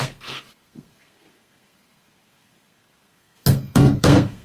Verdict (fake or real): fake